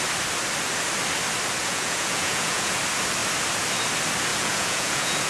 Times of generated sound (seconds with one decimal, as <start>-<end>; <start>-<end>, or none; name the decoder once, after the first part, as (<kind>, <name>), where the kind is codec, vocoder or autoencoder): 1.6-2.8 (vocoder, Vocos); 4.3-5.3